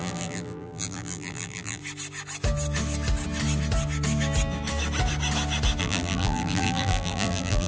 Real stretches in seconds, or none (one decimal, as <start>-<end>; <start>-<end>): 1.8-5.8